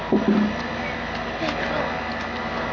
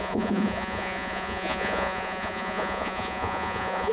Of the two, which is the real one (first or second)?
first